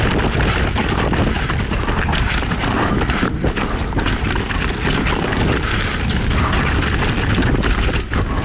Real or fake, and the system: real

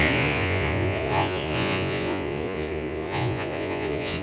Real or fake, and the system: fake, vocoder, Vocos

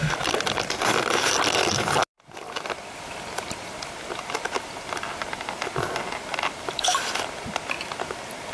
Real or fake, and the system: real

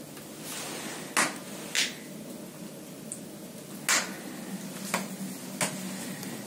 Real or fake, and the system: real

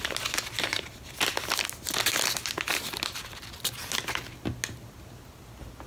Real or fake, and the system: real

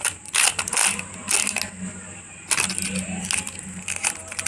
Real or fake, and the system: real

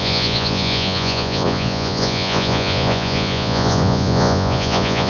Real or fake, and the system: fake, vocoder, Vocos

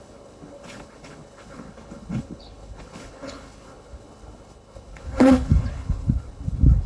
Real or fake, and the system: fake, codec, HILCodec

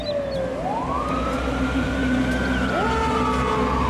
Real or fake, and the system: real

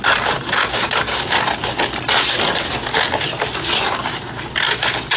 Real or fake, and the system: real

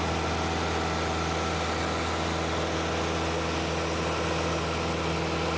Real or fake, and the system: real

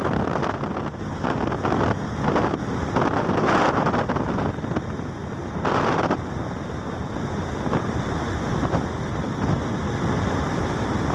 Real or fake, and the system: real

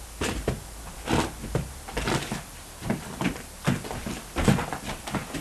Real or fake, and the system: real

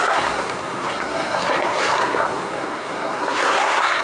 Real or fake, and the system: fake, codec, SNAC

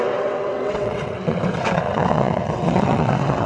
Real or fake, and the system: fake, vocoder, WaveNeXt